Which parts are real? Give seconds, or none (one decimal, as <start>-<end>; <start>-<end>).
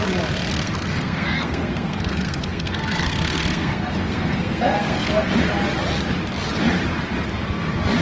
0.0-0.5; 5.3-8.0